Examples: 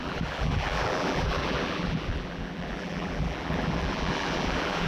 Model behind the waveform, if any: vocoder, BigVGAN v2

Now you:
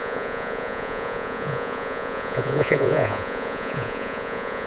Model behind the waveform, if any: vocoder, Vocos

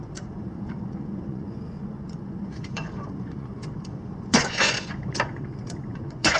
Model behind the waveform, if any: vocoder, Vocos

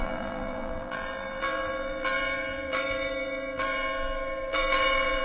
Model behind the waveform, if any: vocoder, BigVGAN v2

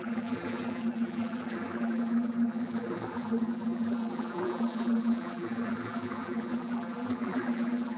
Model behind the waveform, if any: vocoder, BigVGAN v2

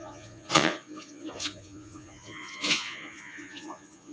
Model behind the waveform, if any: vocoder, Vocos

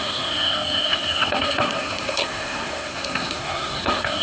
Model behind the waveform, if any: codec, SNAC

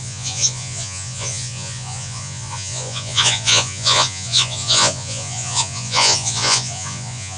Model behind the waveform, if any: vocoder, Vocos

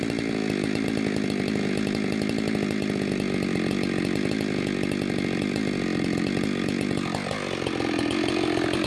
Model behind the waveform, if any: none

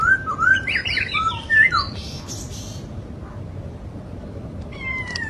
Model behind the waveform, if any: vocoder, BigVGAN v2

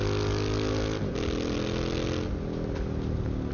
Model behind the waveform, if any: none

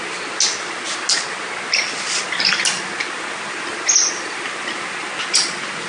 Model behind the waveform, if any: none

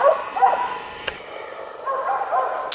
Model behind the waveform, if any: none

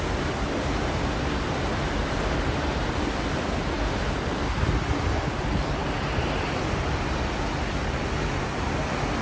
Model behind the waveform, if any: none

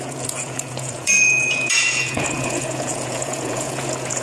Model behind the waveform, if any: vocoder, Vocos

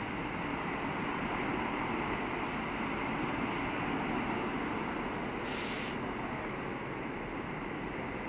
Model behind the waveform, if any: none